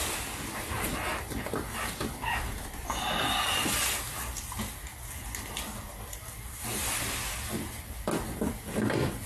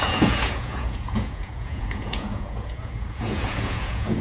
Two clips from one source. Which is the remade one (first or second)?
second